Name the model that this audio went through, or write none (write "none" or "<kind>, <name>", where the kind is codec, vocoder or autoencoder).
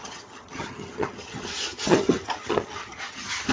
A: vocoder, HiFi-GAN